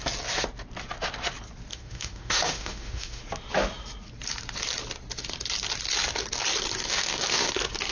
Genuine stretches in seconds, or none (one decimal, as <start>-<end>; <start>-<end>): 0.0-1.7; 3.2-6.8; 7.5-7.9